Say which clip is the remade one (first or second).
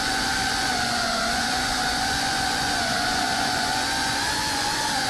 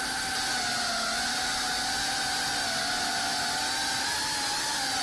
first